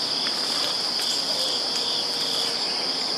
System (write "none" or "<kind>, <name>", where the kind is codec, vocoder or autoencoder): none